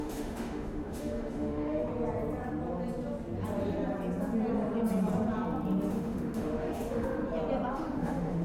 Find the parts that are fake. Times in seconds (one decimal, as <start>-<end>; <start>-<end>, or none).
0.0-1.9; 5.9-7.2; 7.7-8.4

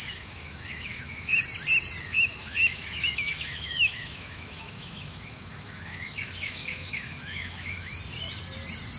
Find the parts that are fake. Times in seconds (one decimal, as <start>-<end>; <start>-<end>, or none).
0.0-1.4; 2.0-7.9

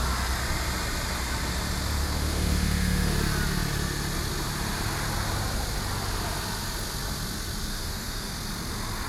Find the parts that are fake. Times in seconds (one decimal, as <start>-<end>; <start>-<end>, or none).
2.0-3.1; 7.7-8.3

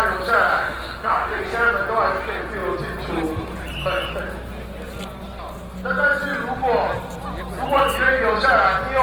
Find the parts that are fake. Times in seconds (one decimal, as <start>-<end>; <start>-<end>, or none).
0.5-1.4

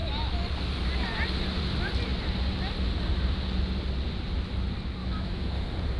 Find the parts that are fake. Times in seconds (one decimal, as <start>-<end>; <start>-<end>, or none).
5.0-5.5